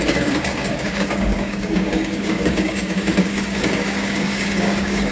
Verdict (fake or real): fake